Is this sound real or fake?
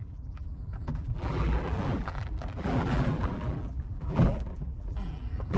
fake